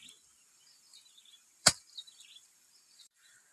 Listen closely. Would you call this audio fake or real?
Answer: fake